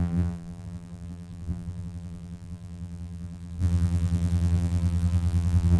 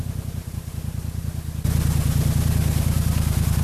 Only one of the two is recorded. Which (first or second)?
second